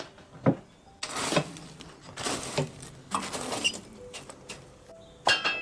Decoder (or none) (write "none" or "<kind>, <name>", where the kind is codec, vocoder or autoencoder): none